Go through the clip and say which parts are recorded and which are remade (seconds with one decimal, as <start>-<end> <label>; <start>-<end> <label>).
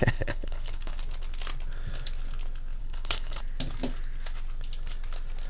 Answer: 0.0-1.0 remade; 1.0-2.8 recorded; 2.8-3.4 remade; 3.4-5.5 recorded